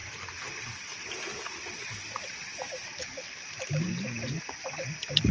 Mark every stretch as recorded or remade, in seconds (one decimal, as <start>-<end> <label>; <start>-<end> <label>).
0.0-5.3 recorded

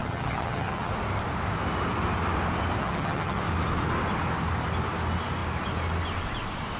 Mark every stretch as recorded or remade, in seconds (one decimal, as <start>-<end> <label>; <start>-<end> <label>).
0.0-0.9 remade; 0.9-2.8 recorded; 2.8-3.4 remade; 3.4-6.8 recorded

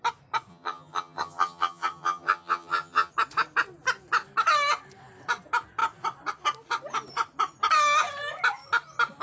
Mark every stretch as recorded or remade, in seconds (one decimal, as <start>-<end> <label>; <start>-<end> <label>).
0.0-0.5 recorded; 0.5-3.1 remade; 3.1-9.2 recorded

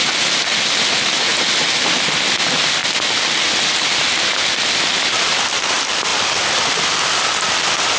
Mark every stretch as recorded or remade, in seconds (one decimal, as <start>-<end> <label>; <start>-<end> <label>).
0.0-8.0 recorded

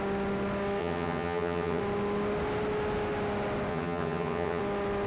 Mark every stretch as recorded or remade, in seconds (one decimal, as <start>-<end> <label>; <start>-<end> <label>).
0.0-0.8 recorded; 0.8-1.8 remade; 1.8-3.7 recorded; 3.7-4.6 remade; 4.6-5.1 recorded